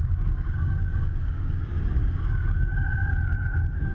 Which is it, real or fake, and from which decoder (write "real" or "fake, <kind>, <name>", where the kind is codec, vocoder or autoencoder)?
fake, codec, DAC